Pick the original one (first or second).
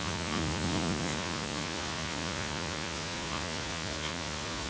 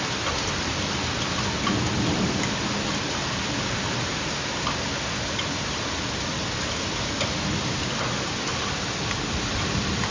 second